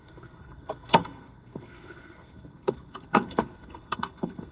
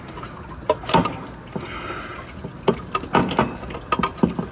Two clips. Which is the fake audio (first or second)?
first